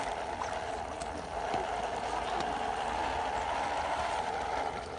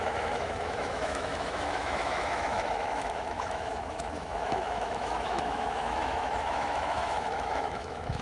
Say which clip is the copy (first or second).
second